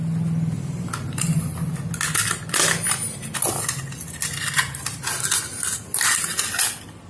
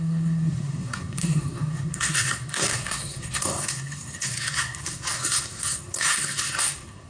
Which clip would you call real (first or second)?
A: first